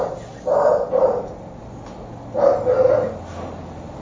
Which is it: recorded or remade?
recorded